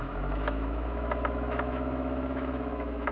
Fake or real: fake